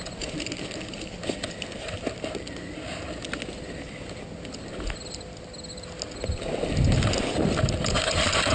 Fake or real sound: real